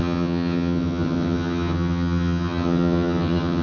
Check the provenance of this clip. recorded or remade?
remade